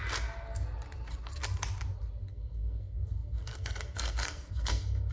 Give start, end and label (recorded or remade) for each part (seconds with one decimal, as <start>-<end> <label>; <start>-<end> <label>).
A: 0.0-2.3 recorded; 2.3-5.1 remade